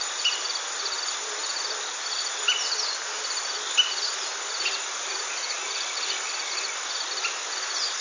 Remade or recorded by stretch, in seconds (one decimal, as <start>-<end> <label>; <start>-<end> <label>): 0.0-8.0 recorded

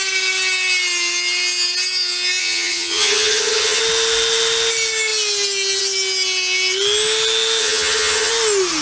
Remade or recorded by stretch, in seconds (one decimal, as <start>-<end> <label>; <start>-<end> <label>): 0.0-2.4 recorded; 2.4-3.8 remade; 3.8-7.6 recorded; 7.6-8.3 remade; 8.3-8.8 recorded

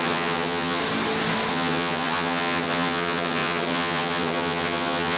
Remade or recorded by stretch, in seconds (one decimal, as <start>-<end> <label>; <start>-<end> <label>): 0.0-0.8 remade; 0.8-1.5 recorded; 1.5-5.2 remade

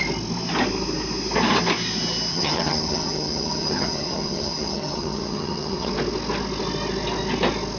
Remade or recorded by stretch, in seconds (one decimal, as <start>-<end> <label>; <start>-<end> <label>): 0.0-2.3 recorded; 2.3-5.9 remade; 5.9-7.8 recorded

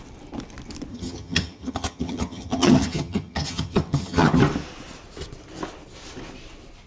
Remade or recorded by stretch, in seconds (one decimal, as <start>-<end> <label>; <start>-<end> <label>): 0.0-0.9 recorded; 0.9-4.4 remade; 4.4-6.9 recorded

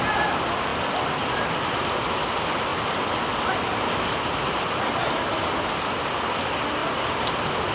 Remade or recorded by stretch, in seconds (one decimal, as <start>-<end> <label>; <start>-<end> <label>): 0.0-7.7 recorded

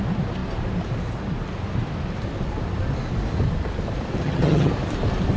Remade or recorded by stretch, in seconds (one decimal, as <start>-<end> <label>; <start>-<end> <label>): 0.0-4.2 recorded; 4.2-4.7 remade; 4.7-5.4 recorded

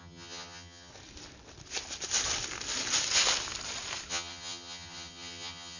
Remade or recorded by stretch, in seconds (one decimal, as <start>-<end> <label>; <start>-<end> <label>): 0.0-0.9 remade; 0.9-4.1 recorded; 4.1-5.8 remade